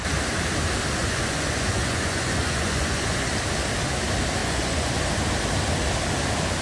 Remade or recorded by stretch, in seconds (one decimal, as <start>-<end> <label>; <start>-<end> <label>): 0.0-1.0 recorded; 1.0-3.3 remade; 3.3-4.4 recorded; 4.4-5.0 remade; 5.0-6.6 recorded